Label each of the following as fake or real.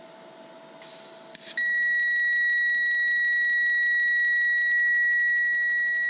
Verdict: real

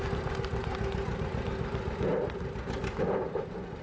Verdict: real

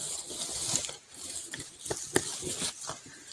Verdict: real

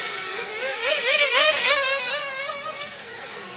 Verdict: fake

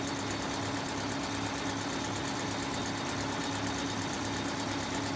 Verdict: real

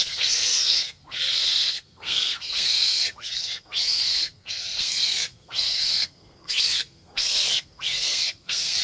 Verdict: fake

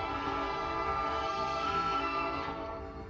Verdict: fake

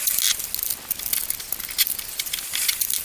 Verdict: real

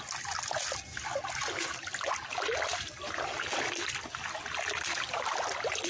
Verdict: real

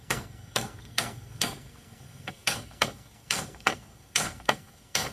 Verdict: fake